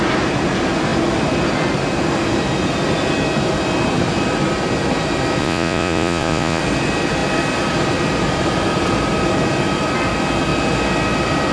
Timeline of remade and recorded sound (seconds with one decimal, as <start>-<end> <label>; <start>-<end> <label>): 0.0-5.4 recorded; 5.4-6.6 remade; 6.6-11.5 recorded